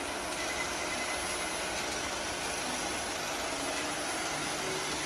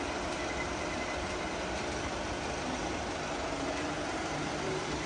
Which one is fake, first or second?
second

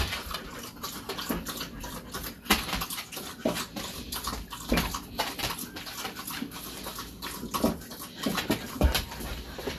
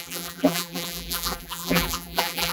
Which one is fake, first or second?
second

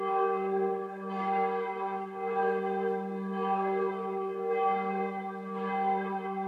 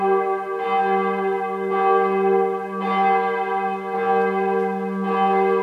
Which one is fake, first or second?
first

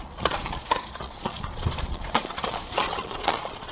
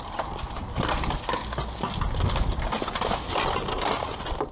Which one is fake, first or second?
first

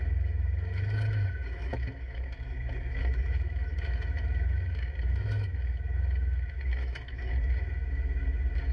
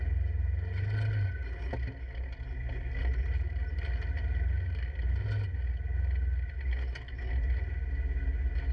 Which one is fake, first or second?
first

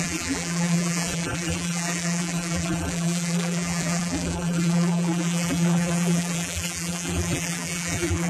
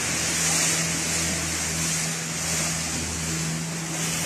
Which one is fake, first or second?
first